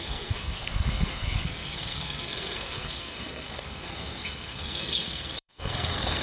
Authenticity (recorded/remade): remade